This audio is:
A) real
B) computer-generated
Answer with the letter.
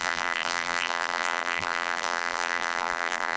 B